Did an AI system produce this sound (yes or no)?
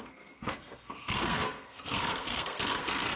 yes